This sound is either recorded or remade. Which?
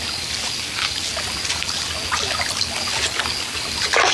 recorded